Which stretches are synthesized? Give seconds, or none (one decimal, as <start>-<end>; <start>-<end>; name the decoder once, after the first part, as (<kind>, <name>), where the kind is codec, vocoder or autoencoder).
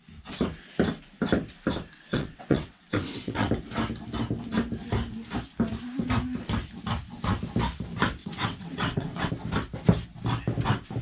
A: 2.1-3.5 (vocoder, WaveNeXt); 8.2-9.3